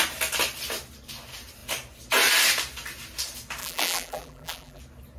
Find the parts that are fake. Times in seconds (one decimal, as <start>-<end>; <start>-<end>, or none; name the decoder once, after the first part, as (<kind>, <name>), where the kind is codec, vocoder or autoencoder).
3.6-4.8 (vocoder, BigVGAN v2)